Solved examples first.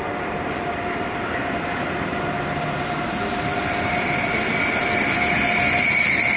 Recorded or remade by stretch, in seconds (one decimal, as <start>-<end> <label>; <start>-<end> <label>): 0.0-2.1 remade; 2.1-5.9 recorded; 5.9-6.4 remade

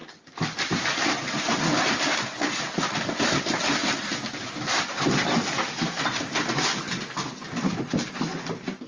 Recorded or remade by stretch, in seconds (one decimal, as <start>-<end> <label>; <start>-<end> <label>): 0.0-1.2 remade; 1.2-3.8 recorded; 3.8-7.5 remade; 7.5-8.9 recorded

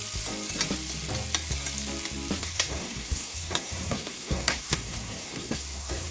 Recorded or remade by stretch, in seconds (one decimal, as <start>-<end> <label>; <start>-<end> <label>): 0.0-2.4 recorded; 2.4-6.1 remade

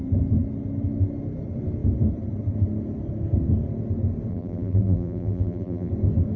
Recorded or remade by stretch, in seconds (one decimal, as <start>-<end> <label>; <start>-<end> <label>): 0.0-4.3 recorded; 4.3-5.9 remade; 5.9-6.4 recorded